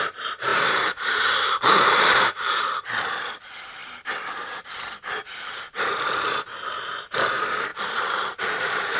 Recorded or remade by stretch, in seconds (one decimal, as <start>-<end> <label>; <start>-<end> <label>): 0.0-0.5 recorded; 0.5-3.4 remade; 3.4-5.3 recorded; 5.3-6.7 remade; 6.7-7.7 recorded; 7.7-9.0 remade